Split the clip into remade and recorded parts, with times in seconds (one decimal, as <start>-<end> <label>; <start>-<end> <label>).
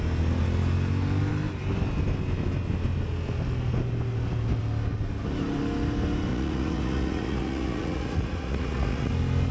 0.0-6.3 recorded; 6.3-9.1 remade; 9.1-9.5 recorded